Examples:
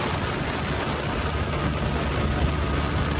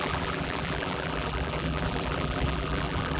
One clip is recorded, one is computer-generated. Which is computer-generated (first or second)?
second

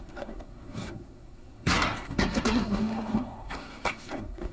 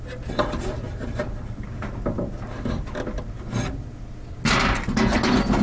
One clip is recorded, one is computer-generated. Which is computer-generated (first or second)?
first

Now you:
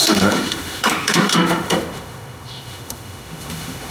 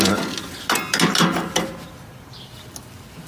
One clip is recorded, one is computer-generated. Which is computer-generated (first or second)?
first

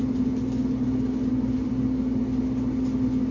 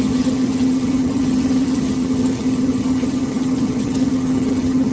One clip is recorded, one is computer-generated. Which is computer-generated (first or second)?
second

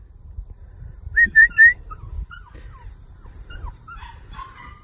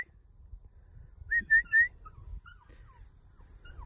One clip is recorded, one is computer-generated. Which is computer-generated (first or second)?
first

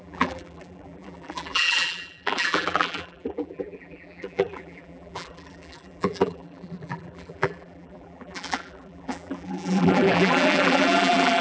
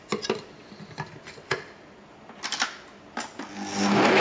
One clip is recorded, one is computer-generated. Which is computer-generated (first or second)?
first